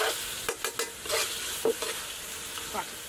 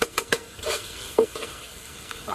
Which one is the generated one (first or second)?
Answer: second